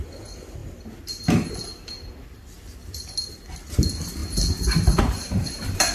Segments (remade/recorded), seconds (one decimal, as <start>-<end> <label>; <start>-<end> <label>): 0.0-4.2 remade; 4.2-5.0 recorded; 5.0-5.9 remade